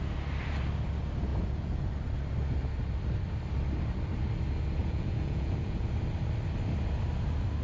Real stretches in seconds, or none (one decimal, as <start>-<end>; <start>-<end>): 0.0-1.3; 1.9-4.8; 5.9-7.6

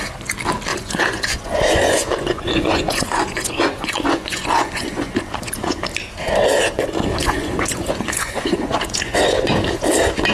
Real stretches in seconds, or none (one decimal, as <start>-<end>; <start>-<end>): 0.0-0.7; 5.8-7.2; 9.5-10.3

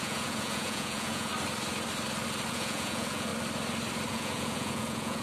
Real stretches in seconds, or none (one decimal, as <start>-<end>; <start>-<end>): 1.3-2.5; 3.3-4.1